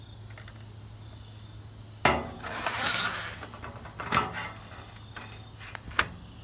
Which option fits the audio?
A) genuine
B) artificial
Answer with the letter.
A